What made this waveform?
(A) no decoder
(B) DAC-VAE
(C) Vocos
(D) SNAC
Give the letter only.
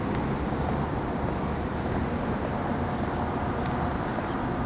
A